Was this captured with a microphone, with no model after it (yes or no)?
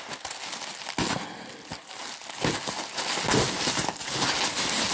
yes